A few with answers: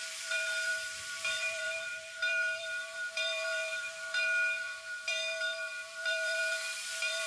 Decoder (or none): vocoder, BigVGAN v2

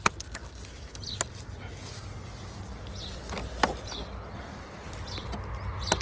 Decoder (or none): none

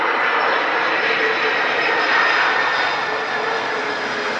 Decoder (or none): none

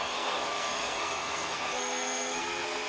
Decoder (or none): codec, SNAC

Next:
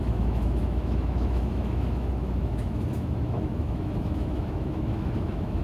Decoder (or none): autoencoder, DAC-VAE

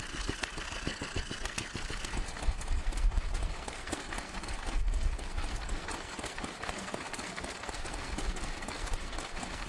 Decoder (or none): codec, SNAC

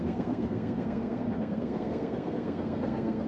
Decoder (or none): codec, SNAC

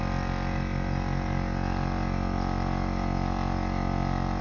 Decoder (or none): none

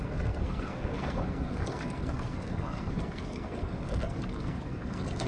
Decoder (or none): codec, SNAC